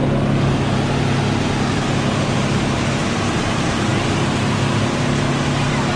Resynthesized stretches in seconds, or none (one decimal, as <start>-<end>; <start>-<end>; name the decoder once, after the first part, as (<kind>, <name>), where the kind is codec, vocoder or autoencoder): none